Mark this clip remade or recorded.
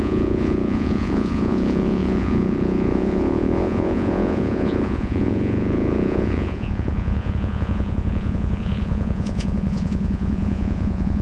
remade